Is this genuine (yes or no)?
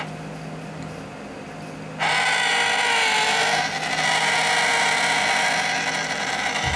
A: yes